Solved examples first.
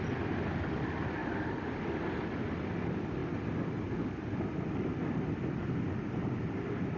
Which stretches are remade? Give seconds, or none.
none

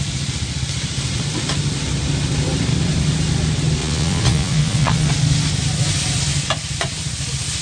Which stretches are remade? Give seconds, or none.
3.8-5.1 (vocoder, Vocos)

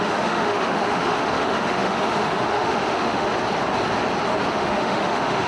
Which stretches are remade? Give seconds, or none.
0.0-3.3 (autoencoder, DAC-VAE); 4.5-5.5

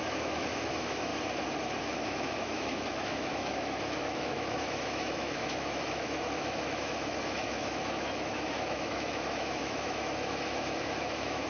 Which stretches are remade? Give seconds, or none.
0.0-1.1 (autoencoder, DAC-VAE); 1.8-11.5

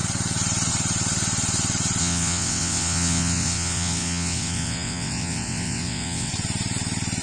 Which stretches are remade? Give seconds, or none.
2.0-6.3 (vocoder, WaveNeXt)